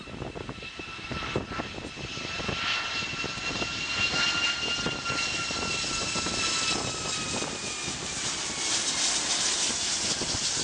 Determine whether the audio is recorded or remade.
recorded